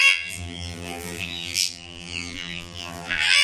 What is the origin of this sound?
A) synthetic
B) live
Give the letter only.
A